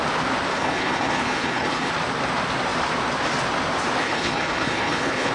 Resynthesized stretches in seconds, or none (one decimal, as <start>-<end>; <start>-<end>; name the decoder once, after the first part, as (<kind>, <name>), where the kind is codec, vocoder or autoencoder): 0.5-1.9 (codec, HILCodec); 4.0-5.3